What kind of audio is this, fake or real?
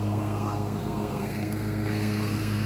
fake